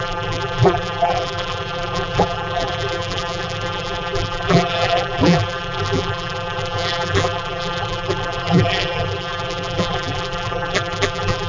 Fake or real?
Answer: fake